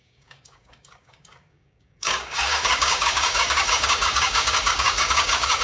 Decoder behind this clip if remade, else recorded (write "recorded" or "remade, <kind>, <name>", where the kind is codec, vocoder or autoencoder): remade, codec, DAC